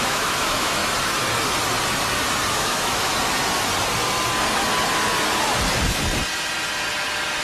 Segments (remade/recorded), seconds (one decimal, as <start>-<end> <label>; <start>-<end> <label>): 0.0-0.8 remade; 0.8-2.5 recorded; 2.5-3.1 remade; 3.1-7.4 recorded